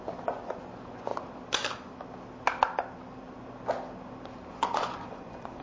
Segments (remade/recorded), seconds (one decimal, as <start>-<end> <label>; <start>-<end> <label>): 0.0-1.1 remade; 1.1-4.5 recorded; 4.5-5.6 remade